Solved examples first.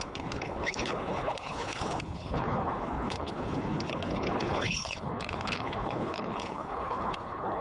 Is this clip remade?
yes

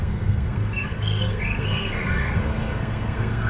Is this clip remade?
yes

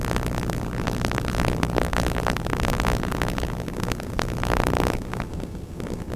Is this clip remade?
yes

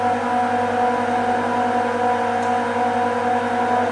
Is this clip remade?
no